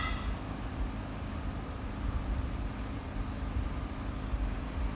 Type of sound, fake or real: real